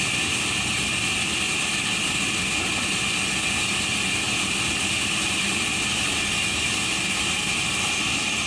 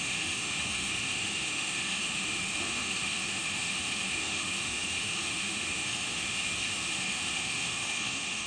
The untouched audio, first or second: first